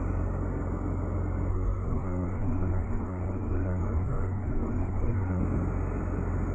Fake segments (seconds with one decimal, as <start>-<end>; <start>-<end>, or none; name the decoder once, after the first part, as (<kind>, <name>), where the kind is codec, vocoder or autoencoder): 1.5-5.4 (codec, SNAC)